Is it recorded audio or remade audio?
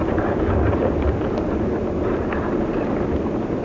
recorded